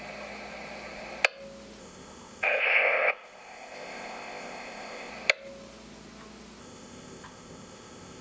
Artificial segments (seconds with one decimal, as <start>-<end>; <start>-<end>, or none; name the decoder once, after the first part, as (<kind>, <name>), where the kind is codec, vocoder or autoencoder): 1.8-5.1 (codec, ZipCodec); 6.6-8.2